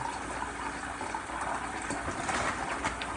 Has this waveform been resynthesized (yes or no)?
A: no